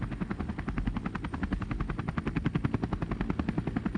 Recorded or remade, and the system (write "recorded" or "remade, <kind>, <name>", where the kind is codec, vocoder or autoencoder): recorded